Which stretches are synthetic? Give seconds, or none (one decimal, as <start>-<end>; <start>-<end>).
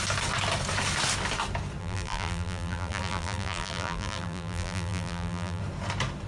1.8-5.6